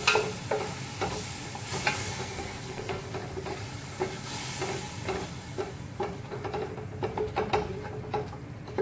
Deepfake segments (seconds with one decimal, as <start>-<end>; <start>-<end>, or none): 2.0-3.1